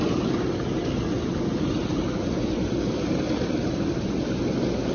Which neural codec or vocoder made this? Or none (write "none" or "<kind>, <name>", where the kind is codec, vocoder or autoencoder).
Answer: none